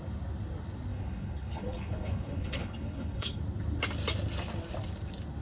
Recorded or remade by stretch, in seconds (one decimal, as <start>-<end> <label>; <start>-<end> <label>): 0.0-0.9 recorded; 0.9-3.4 remade; 3.4-5.4 recorded